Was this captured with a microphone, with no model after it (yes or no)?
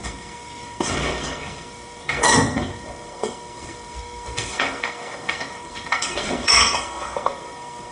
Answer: no